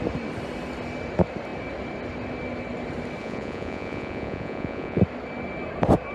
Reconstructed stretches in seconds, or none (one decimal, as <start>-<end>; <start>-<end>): 3.2-5.0